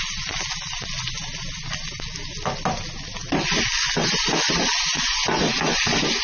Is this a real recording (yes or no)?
yes